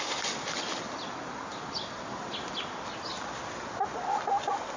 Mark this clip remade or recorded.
recorded